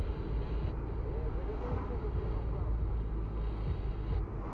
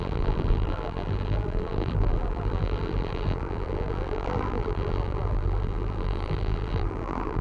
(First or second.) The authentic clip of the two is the first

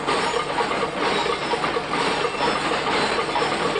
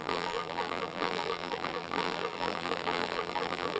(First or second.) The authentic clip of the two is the first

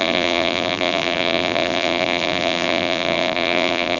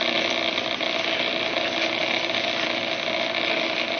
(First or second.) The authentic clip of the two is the second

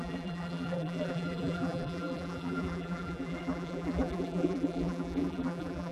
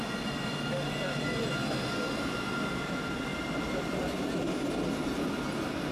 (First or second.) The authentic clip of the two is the second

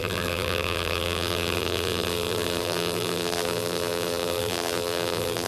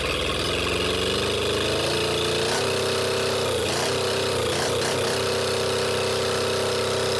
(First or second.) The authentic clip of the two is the second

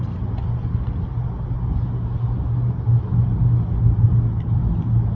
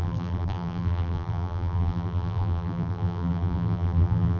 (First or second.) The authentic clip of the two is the first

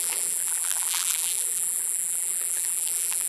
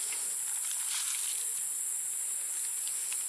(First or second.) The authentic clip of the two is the second